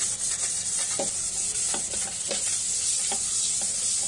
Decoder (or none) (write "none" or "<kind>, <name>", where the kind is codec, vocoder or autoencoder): none